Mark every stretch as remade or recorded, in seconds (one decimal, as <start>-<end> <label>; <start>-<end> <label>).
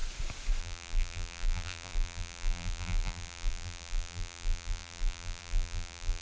0.0-0.6 recorded; 0.6-6.2 remade